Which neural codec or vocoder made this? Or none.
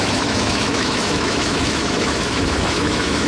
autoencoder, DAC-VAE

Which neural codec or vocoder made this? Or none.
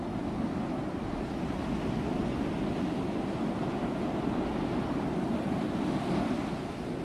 none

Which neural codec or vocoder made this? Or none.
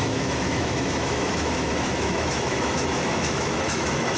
autoencoder, DAC-VAE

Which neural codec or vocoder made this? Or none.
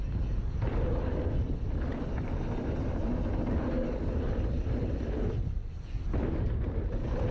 none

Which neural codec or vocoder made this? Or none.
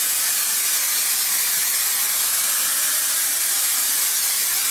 none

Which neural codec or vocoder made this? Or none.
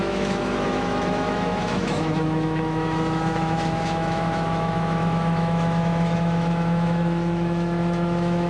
autoencoder, DAC-VAE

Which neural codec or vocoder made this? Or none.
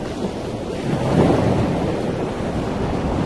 none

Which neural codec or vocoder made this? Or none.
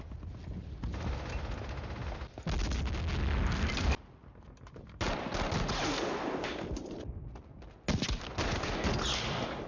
none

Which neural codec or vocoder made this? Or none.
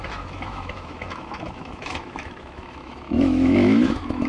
autoencoder, DAC-VAE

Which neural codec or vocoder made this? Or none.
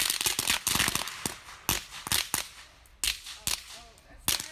none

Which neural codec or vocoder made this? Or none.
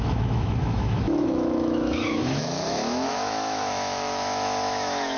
autoencoder, DAC-VAE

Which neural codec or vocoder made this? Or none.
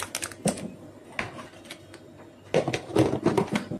none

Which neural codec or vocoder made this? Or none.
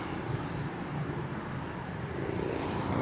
none